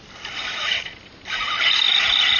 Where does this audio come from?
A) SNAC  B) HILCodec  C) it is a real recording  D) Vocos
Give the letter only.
C